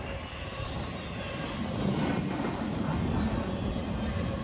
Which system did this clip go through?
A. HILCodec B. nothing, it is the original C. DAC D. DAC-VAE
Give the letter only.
B